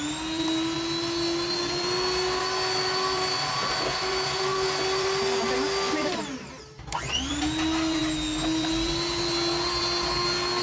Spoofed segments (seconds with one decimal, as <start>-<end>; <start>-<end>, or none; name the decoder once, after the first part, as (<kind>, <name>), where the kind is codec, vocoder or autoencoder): none

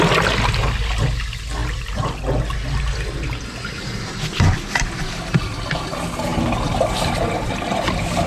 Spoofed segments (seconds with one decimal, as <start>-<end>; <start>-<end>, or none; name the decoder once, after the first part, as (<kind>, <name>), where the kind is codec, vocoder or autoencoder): none

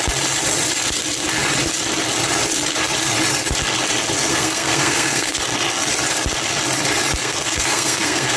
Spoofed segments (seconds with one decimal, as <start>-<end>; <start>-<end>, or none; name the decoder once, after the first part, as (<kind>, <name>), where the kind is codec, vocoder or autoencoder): 4.3-5.3 (codec, SNAC); 7.2-8.4

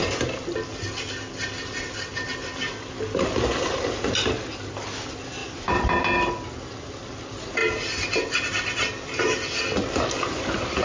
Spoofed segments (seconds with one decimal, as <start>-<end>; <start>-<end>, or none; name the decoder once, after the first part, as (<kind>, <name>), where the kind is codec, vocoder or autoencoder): 5.4-6.0 (vocoder, BigVGAN v2)

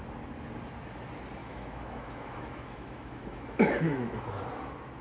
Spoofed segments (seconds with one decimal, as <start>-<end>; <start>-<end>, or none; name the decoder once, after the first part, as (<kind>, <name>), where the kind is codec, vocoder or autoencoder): 1.4-4.4 (autoencoder, DAC-VAE)